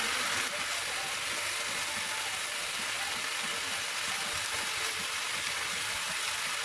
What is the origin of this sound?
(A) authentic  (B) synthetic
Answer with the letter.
A